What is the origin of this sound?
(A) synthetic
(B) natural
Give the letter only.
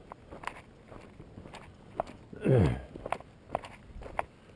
B